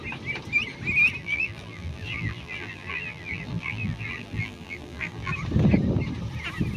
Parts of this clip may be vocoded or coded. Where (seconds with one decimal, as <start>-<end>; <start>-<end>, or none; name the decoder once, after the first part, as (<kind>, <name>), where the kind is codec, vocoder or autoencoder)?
1.2-5.3 (vocoder, BigVGAN v2)